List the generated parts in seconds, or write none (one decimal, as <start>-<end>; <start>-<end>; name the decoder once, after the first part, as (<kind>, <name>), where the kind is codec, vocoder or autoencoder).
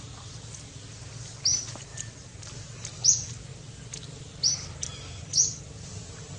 none